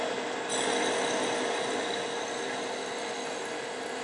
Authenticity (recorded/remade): recorded